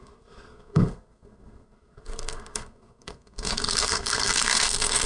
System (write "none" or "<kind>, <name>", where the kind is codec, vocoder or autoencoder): codec, SNAC